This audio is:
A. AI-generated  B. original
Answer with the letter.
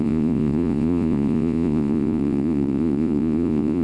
A